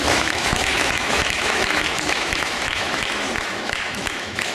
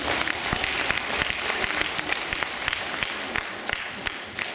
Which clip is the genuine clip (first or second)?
second